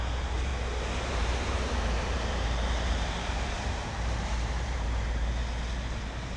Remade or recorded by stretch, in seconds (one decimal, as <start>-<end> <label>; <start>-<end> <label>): 0.0-0.5 remade; 0.5-1.1 recorded; 1.1-5.4 remade; 5.4-6.4 recorded